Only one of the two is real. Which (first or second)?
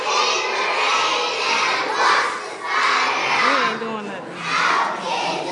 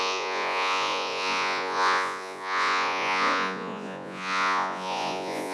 first